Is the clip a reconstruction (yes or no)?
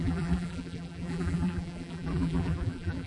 yes